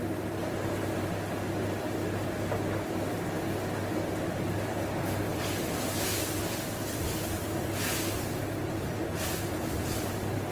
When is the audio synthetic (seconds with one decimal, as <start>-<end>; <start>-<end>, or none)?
5.3-7.0